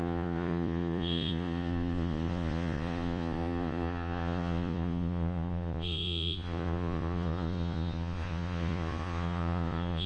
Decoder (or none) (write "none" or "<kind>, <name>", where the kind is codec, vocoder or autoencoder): vocoder, Vocos